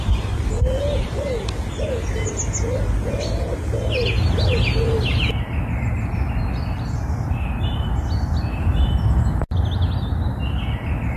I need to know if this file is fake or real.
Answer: real